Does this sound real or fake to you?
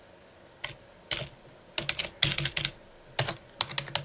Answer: real